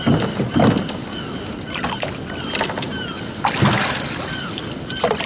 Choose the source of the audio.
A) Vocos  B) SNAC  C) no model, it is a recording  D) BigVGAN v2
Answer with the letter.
C